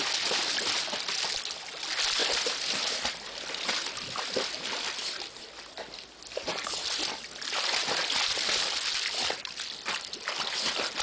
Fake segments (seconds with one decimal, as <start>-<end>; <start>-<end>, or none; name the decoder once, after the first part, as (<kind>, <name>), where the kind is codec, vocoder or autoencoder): 2.2-4.5 (vocoder, BigVGAN v2)